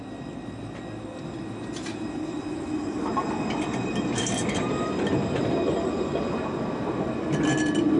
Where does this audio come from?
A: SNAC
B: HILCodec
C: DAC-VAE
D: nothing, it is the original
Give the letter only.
D